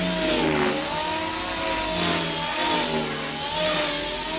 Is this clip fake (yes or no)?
no